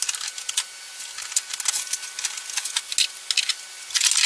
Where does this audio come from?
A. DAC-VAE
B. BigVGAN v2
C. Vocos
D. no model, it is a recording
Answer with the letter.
D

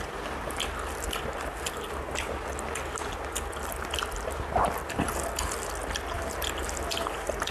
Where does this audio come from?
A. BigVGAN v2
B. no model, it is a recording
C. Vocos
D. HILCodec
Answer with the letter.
A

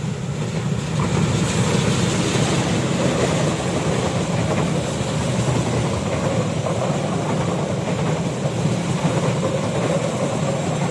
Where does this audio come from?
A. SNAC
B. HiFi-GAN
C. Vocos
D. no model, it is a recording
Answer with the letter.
D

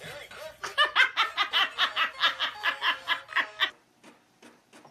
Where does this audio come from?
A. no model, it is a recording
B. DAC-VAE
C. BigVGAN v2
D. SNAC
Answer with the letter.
A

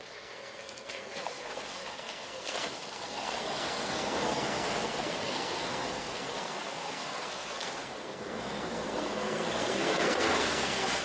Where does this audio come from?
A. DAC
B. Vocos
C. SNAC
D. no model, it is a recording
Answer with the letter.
C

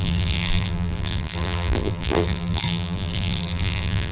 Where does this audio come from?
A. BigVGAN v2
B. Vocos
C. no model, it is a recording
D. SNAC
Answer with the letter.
A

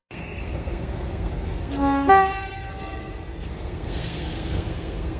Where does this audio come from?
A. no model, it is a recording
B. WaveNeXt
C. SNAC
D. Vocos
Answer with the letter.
C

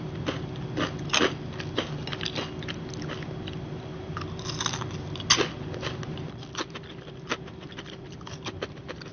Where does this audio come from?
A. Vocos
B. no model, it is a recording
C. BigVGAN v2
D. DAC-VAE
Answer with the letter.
B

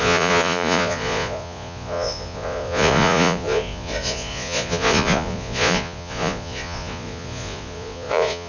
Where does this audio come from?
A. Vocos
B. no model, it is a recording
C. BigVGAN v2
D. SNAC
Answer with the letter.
A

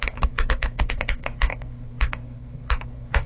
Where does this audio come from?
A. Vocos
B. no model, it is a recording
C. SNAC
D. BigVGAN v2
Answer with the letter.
C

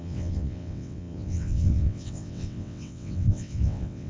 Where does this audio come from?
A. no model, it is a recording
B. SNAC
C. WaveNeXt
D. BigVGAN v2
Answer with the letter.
C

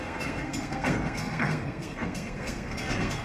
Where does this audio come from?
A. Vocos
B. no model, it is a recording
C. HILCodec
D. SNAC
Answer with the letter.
D